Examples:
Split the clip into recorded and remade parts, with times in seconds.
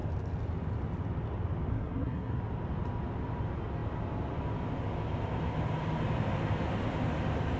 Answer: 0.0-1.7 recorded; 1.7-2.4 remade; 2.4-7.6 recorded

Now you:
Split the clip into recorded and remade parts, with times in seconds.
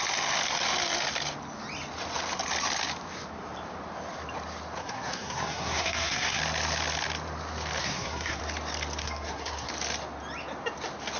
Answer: 0.0-4.8 recorded; 4.8-6.4 remade; 6.4-7.8 recorded; 7.8-8.4 remade; 8.4-9.0 recorded; 9.0-9.7 remade; 9.7-11.2 recorded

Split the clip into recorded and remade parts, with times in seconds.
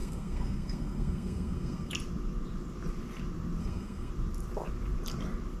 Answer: 0.0-1.9 remade; 1.9-3.6 recorded; 3.6-4.1 remade; 4.1-5.6 recorded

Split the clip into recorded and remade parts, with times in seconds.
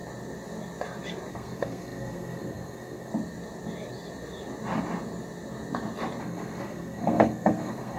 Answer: 0.0-1.3 recorded; 1.3-3.1 remade; 3.1-6.2 recorded; 6.2-8.0 remade